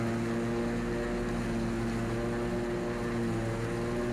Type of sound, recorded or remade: recorded